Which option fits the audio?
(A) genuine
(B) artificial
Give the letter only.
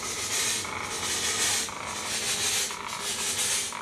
A